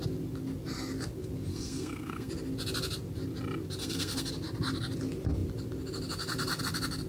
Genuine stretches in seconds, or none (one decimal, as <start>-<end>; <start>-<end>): 0.0-1.5; 2.3-3.8; 4.3-7.1